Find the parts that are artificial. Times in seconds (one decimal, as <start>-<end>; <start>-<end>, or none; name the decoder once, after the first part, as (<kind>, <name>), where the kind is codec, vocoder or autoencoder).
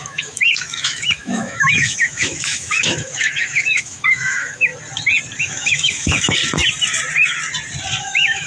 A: 0.0-4.7 (autoencoder, DAC-VAE); 5.4-6.4; 8.0-8.5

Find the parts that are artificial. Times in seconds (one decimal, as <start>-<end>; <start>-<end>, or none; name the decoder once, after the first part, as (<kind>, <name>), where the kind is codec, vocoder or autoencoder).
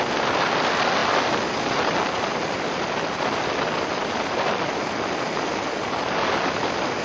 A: none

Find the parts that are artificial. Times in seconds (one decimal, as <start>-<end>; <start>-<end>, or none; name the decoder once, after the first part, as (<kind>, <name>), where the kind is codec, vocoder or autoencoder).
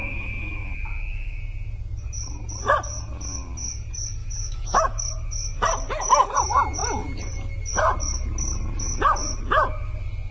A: 0.0-1.4 (autoencoder, DAC-VAE); 4.2-5.0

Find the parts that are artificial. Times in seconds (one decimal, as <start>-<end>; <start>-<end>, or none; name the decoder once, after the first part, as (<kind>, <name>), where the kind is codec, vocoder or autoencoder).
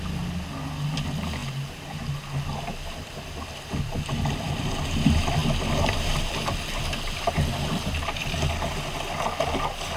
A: none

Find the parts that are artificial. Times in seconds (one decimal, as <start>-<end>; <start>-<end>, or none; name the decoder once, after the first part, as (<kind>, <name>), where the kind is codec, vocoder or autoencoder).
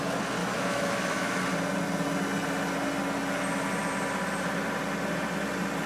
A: 0.4-1.4 (autoencoder, DAC-VAE)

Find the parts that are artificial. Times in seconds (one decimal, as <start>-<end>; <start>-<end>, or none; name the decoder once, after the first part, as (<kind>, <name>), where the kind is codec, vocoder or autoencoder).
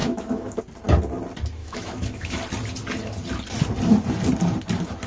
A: 0.0-0.6 (autoencoder, DAC-VAE); 1.6-2.4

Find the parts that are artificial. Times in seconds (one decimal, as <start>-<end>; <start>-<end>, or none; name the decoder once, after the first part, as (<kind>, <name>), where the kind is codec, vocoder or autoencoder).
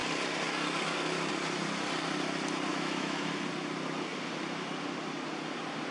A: 2.7-3.3 (autoencoder, DAC-VAE)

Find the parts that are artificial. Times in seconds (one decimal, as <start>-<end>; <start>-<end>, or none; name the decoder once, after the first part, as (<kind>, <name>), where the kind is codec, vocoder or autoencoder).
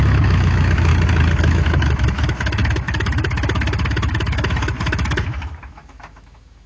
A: 0.0-0.9 (autoencoder, DAC-VAE); 1.4-6.7